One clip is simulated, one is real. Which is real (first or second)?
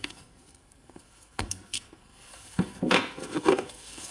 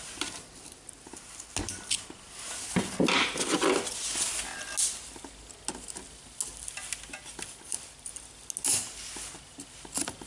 second